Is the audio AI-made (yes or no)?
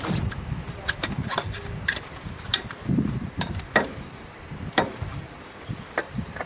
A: yes